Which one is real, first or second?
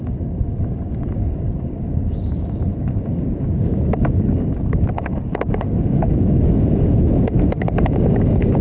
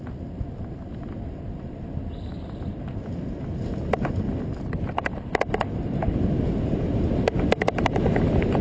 second